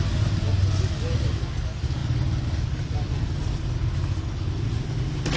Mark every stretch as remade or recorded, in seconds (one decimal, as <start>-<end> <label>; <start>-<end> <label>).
0.0-5.4 recorded